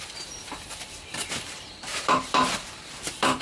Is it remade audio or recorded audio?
remade